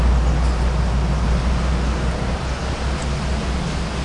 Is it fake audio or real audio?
real